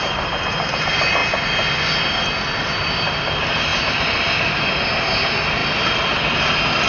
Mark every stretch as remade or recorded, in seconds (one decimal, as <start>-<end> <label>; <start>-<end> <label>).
0.0-6.9 recorded